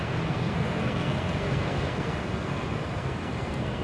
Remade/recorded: remade